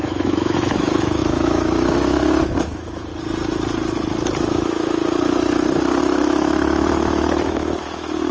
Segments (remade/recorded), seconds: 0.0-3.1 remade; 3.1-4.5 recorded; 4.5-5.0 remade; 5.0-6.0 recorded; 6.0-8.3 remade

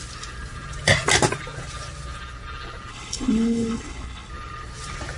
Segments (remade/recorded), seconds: 0.0-2.9 recorded; 2.9-4.3 remade; 4.3-5.2 recorded

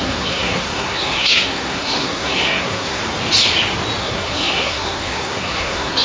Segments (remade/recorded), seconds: 0.0-3.0 remade; 3.0-4.0 recorded; 4.0-6.0 remade

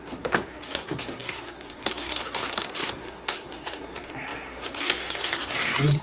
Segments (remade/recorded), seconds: 0.0-6.0 remade

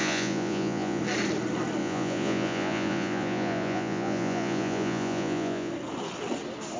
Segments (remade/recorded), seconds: 0.0-1.0 remade; 1.0-1.8 recorded; 1.8-5.7 remade; 5.7-6.8 recorded

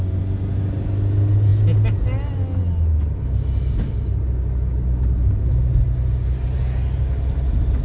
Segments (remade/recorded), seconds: 0.0-7.8 recorded